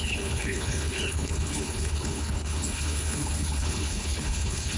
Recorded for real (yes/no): no